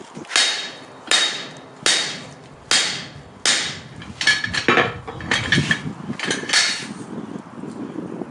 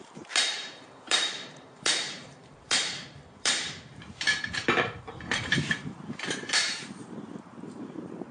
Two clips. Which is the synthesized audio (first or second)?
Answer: second